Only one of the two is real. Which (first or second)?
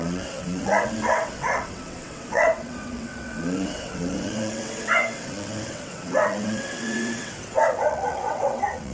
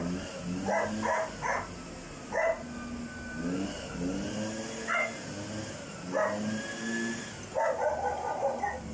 second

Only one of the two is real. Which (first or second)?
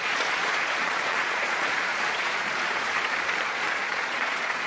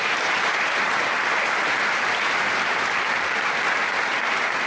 second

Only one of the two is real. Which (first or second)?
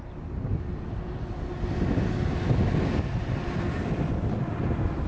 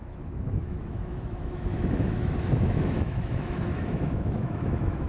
first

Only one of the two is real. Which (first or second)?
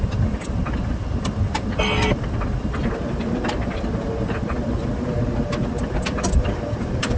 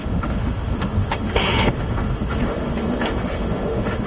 first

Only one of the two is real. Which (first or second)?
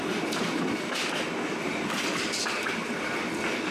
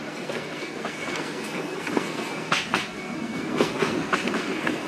first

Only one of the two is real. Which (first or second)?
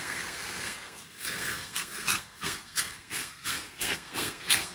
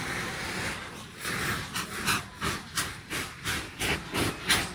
second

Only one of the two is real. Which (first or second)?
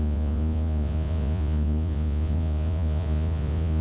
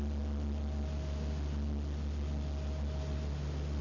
second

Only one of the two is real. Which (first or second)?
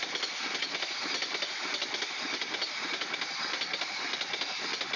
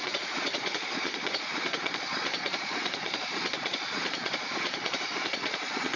first